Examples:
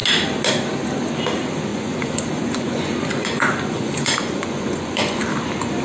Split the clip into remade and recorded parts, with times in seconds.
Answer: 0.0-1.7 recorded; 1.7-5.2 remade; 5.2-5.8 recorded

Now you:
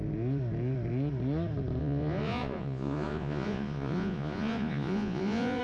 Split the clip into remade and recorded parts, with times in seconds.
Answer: 0.0-1.8 recorded; 1.8-5.6 remade

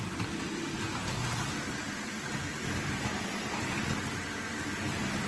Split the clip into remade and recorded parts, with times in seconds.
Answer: 0.0-5.3 recorded

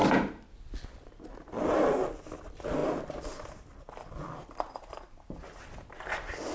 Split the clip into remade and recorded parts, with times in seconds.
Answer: 0.0-6.5 recorded

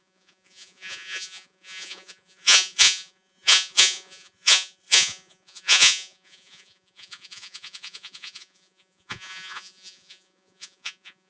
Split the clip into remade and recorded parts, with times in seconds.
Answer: 0.0-11.3 remade